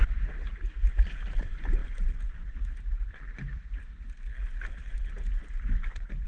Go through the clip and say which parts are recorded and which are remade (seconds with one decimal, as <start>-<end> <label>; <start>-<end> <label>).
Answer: 0.0-6.3 recorded